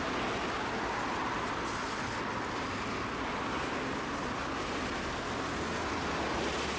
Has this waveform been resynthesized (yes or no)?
no